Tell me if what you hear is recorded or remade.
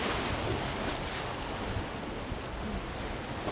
recorded